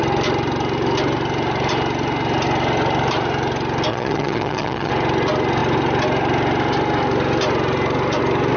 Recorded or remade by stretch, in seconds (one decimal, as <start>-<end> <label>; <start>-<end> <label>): 0.0-3.9 recorded; 3.9-4.9 remade; 4.9-8.6 recorded